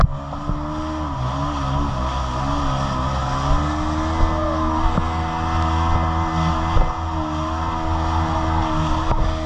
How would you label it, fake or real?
real